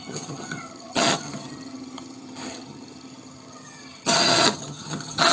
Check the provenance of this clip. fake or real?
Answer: fake